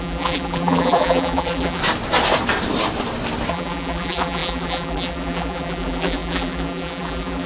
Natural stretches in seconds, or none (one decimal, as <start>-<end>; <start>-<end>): 1.8-3.5